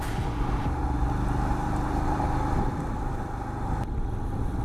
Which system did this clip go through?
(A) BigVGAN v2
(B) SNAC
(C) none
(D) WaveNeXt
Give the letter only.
C